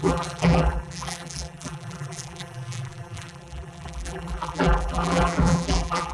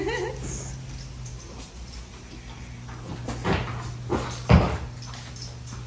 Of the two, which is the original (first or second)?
second